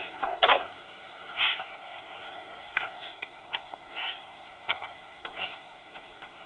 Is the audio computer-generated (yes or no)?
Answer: yes